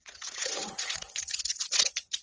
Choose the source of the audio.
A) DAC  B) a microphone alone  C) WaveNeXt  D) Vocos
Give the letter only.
C